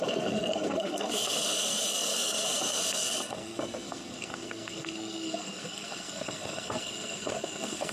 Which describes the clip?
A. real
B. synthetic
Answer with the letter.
B